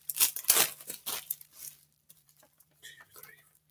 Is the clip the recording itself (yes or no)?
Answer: no